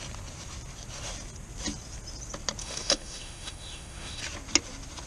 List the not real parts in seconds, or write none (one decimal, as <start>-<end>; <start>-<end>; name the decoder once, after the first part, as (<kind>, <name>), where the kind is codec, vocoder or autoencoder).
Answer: 2.6-4.2 (autoencoder, DAC-VAE)